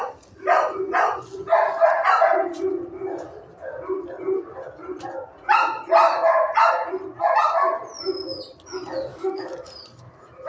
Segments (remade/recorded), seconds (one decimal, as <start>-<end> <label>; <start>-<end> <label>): 0.0-9.1 recorded; 9.1-9.7 remade; 9.7-10.5 recorded